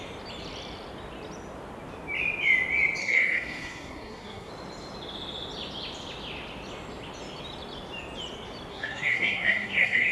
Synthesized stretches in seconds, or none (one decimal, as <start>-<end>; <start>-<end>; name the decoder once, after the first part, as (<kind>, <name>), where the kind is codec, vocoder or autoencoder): 3.0-4.5 (codec, SNAC); 8.7-10.1